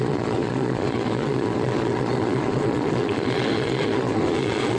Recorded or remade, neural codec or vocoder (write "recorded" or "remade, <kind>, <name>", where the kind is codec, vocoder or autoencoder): remade, vocoder, Vocos